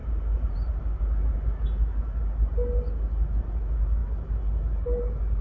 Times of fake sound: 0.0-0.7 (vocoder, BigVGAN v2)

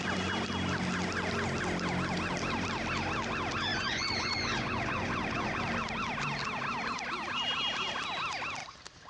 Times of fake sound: 3.7-5.6 (vocoder, Vocos)